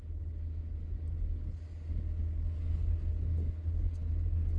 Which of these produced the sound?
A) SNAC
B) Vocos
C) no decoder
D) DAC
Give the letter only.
C